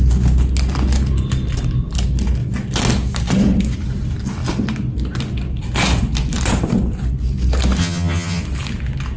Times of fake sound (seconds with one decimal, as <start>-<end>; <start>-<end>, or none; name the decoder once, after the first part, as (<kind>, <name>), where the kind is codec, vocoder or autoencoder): 7.8-8.4 (vocoder, HiFi-GAN)